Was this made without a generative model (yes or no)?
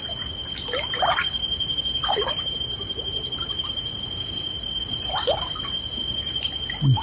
yes